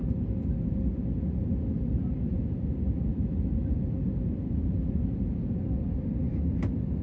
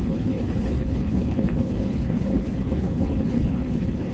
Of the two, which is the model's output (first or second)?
second